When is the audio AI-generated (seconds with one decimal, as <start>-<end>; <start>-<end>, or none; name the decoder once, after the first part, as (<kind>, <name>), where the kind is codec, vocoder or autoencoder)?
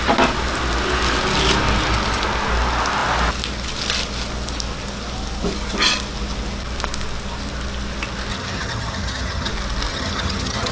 8.3-9.5 (vocoder, HiFi-GAN); 9.9-10.7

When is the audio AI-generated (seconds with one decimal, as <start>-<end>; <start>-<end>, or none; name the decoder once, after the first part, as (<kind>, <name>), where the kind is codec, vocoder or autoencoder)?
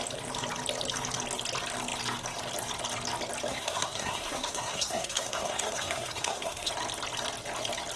3.5-6.7 (codec, SNAC)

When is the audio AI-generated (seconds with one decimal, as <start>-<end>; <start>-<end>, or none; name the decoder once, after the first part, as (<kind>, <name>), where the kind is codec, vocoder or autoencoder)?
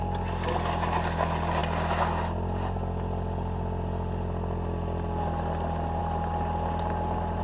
none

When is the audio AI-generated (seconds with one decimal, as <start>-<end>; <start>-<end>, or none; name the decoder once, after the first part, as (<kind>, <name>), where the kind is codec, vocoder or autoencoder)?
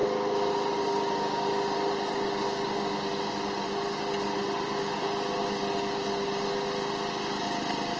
none